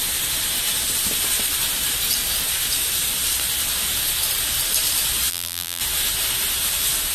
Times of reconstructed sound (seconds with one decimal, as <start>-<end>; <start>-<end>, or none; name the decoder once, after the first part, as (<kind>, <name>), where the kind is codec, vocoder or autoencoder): 5.3-5.8 (vocoder, BigVGAN v2)